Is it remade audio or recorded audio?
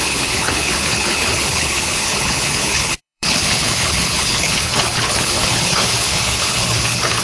remade